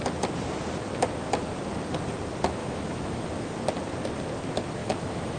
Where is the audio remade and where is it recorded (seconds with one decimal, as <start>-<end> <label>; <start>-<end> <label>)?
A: 0.0-2.6 recorded; 2.6-3.5 remade; 3.5-4.8 recorded; 4.8-5.4 remade

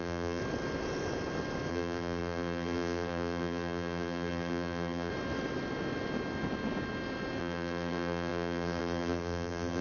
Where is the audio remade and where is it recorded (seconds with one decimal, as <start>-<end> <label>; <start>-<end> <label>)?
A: 0.0-0.4 remade; 0.4-1.7 recorded; 1.7-5.1 remade; 5.1-7.4 recorded; 7.4-9.8 remade

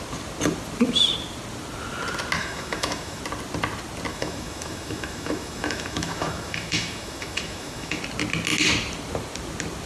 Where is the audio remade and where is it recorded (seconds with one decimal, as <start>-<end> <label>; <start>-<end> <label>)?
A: 0.0-2.4 recorded; 2.4-3.2 remade; 3.2-4.1 recorded; 4.1-8.0 remade; 8.0-9.9 recorded

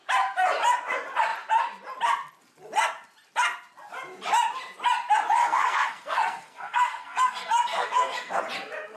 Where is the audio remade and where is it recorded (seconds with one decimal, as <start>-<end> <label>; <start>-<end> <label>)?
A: 0.0-5.4 recorded; 5.4-8.4 remade; 8.4-9.0 recorded

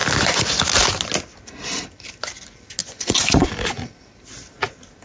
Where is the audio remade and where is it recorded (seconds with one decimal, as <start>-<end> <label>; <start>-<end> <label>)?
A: 0.0-2.8 recorded; 2.8-3.5 remade; 3.5-5.0 recorded

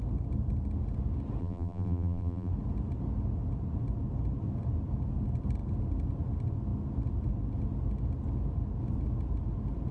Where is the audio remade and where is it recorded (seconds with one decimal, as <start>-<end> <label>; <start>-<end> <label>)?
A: 0.0-1.4 recorded; 1.4-2.5 remade; 2.5-9.9 recorded

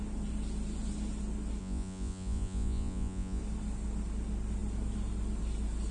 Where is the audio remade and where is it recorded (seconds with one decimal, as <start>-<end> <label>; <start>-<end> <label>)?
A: 0.0-1.6 recorded; 1.6-3.4 remade; 3.4-5.9 recorded

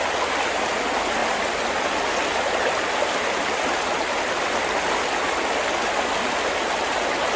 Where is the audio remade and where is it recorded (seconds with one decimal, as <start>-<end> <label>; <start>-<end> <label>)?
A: 0.0-7.4 recorded